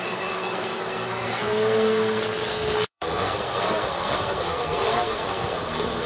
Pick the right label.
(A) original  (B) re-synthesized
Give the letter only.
B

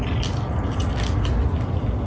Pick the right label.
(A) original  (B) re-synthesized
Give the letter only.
A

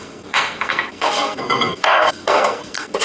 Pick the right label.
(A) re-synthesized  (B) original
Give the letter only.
A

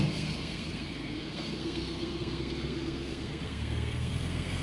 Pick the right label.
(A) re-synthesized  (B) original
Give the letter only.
A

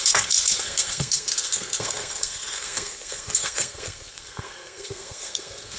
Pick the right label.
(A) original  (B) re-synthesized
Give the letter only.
B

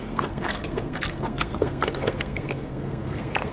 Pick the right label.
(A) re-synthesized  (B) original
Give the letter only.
A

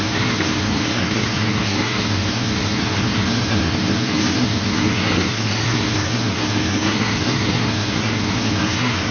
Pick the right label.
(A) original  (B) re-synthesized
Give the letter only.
B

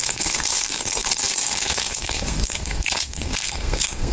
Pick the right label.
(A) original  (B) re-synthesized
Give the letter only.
B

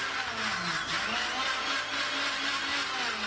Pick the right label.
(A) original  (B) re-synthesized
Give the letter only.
A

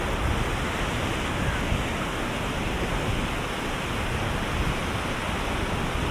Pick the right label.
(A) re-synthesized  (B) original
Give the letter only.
B